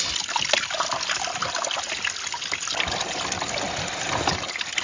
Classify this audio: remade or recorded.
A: recorded